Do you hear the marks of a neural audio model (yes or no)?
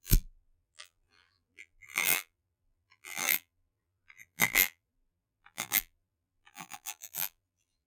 yes